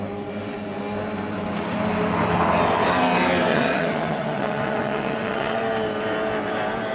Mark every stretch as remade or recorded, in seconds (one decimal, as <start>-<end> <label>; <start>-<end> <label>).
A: 0.0-3.5 recorded; 3.5-5.6 remade; 5.6-6.9 recorded